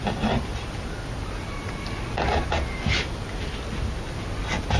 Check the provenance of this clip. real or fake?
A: real